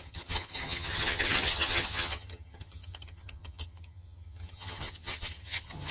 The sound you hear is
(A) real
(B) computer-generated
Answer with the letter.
B